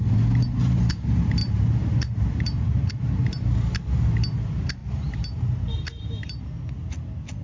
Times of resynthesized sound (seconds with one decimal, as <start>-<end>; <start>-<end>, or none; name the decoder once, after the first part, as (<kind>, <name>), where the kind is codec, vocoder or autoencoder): 1.4-2.9 (vocoder, BigVGAN v2); 4.8-6.4